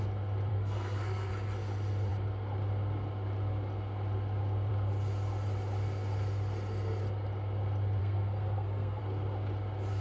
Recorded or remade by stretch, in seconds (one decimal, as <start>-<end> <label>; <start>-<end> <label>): 0.0-0.5 recorded; 0.5-1.3 remade; 1.3-8.0 recorded; 8.0-9.0 remade; 9.0-10.0 recorded